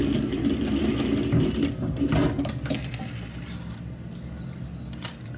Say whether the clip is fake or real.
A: real